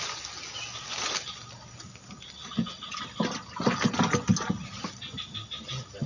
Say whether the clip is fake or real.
real